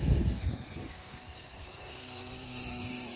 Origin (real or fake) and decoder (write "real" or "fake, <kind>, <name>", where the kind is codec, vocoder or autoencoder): fake, codec, SNAC